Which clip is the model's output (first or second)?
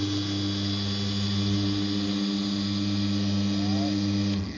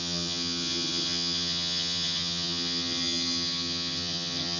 second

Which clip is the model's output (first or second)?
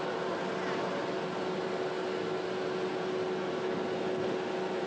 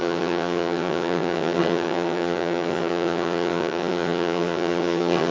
second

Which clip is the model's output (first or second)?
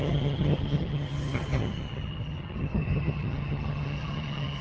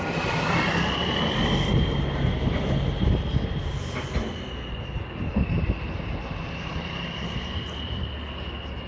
first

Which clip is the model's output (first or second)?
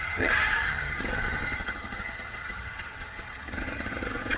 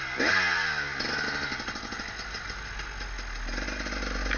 first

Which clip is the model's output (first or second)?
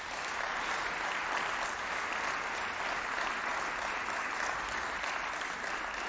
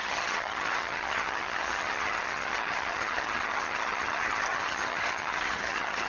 second